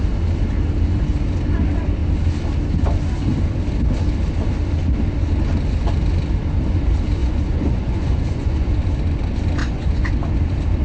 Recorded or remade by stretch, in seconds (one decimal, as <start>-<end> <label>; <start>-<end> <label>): 0.0-7.2 recorded; 7.2-8.7 remade; 8.7-9.6 recorded; 9.6-10.1 remade; 10.1-10.8 recorded